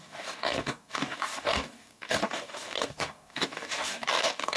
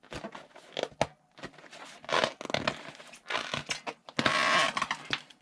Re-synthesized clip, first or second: first